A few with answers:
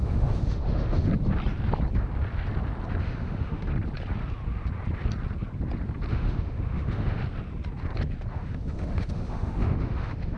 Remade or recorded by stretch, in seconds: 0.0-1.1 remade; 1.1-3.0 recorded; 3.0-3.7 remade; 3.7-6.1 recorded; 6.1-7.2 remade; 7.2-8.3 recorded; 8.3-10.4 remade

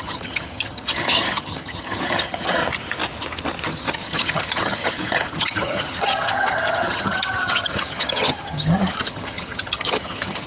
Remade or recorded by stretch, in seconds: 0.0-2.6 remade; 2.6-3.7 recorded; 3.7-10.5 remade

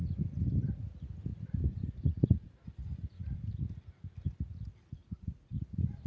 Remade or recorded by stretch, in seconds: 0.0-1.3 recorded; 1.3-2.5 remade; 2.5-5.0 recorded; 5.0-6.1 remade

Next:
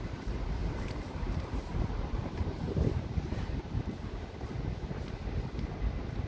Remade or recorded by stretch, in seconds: 0.0-0.6 recorded; 0.6-4.4 remade; 4.4-6.3 recorded